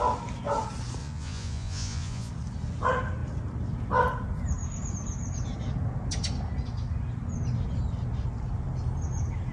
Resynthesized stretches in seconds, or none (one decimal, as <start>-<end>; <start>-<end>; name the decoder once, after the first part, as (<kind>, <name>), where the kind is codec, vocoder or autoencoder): 1.0-2.3 (vocoder, Vocos)